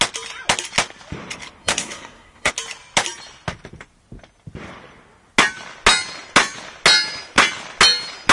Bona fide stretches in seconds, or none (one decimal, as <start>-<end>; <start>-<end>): 0.0-1.6; 2.5-8.3